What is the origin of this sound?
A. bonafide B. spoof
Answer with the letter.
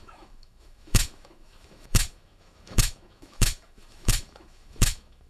B